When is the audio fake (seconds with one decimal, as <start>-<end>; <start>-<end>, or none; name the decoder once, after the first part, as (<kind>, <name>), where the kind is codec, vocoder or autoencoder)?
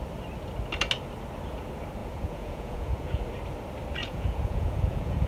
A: 2.0-3.2 (vocoder, Vocos); 4.0-5.3